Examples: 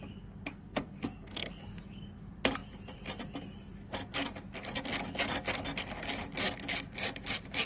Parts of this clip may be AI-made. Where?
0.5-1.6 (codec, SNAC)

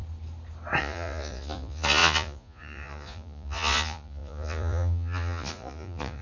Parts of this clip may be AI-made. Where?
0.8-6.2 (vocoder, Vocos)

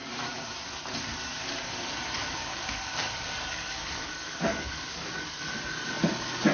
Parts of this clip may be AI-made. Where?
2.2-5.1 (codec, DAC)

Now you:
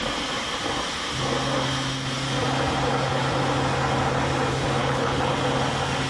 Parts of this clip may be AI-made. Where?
4.8-5.3 (codec, HILCodec)

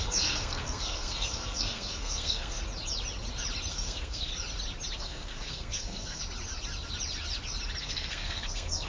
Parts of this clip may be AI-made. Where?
0.0-2.6 (codec, SNAC); 3.7-4.3; 5.0-6.2; 7.8-8.9